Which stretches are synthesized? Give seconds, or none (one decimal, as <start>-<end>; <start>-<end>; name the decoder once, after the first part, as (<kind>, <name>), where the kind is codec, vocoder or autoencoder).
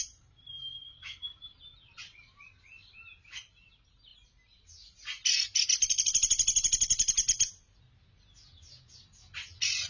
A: 0.8-1.4 (codec, DAC)